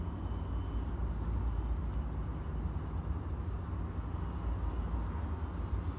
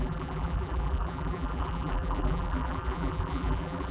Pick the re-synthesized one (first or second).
second